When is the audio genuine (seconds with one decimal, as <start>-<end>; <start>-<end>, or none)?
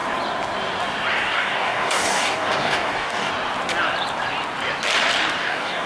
0.0-1.1; 3.3-5.4